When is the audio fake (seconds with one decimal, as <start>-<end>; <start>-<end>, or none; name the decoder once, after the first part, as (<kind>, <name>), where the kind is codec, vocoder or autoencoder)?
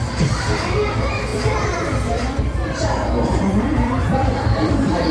0.0-5.1 (vocoder, BigVGAN v2)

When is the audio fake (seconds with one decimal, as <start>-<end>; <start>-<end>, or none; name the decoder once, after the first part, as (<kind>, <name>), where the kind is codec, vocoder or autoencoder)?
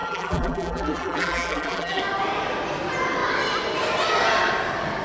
0.0-2.0 (vocoder, BigVGAN v2)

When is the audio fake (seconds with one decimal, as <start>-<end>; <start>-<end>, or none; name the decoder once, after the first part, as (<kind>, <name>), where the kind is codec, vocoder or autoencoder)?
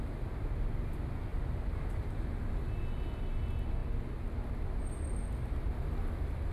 1.3-2.5 (vocoder, BigVGAN v2)